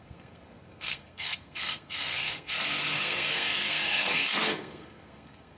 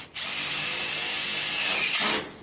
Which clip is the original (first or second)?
second